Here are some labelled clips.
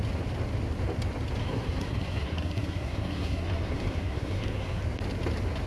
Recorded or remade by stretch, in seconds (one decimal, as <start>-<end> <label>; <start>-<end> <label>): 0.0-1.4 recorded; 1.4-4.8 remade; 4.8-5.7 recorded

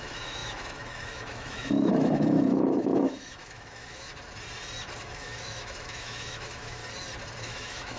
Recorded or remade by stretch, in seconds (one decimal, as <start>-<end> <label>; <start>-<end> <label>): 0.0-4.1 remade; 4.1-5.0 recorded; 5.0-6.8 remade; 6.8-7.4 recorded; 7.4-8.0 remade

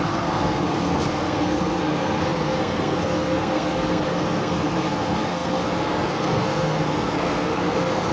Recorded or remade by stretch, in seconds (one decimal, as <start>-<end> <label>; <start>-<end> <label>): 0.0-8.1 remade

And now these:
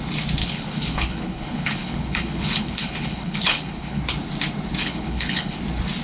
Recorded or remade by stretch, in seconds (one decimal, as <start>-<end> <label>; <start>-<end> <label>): 0.0-0.4 recorded; 0.4-4.0 remade; 4.0-4.8 recorded; 4.8-5.6 remade; 5.6-6.0 recorded